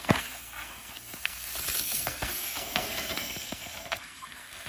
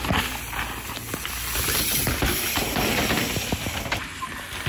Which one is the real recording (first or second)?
second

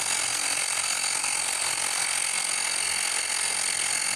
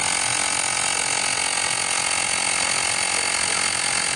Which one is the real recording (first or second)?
second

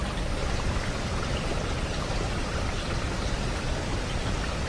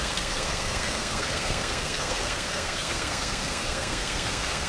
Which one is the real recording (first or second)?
first